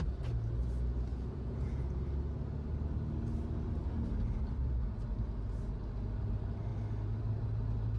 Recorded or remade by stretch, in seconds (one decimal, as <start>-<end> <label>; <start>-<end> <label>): 0.0-1.1 recorded; 1.1-2.0 remade; 2.0-8.0 recorded